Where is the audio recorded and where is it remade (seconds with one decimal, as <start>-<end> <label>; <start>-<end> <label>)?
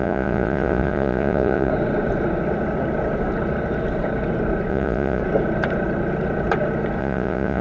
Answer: 0.0-1.7 remade; 1.7-4.7 recorded; 4.7-5.2 remade; 5.2-7.0 recorded; 7.0-7.6 remade